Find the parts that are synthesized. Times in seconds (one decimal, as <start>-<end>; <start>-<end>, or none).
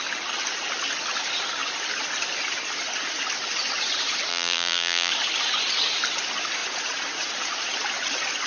4.3-5.1